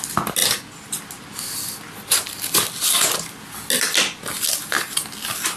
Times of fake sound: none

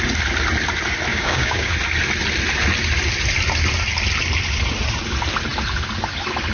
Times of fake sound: 1.1-1.7 (codec, DAC)

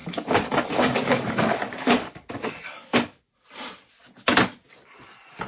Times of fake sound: 0.0-3.3 (codec, DAC)

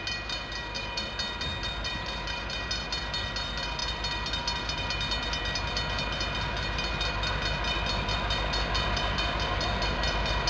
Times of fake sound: none